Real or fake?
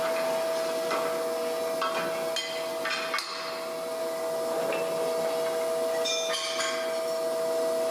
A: real